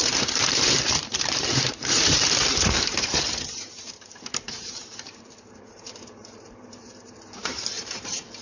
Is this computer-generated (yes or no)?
yes